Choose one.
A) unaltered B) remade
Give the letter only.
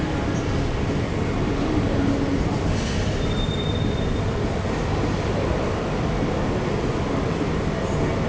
A